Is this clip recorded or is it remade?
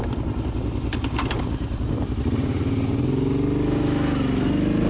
recorded